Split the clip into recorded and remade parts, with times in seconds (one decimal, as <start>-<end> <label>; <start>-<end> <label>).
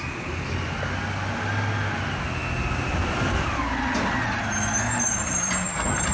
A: 0.0-6.1 recorded